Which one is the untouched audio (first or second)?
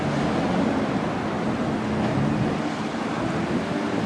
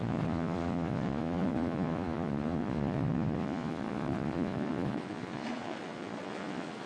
first